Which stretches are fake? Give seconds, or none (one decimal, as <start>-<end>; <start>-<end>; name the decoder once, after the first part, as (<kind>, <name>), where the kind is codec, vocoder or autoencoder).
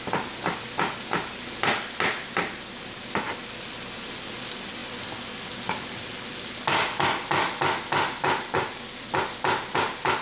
none